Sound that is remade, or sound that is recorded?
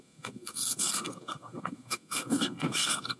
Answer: remade